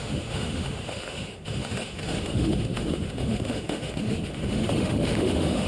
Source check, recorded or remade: remade